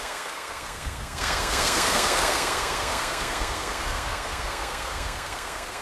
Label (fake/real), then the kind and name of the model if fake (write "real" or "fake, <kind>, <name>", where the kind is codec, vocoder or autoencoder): fake, codec, SNAC